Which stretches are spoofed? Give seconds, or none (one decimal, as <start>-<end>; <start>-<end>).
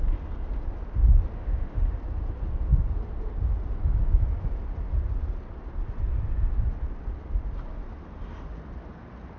1.4-2.0